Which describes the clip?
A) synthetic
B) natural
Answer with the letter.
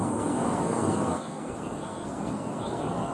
A